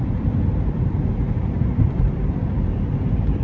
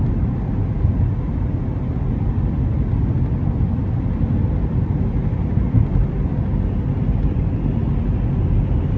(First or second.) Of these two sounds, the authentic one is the second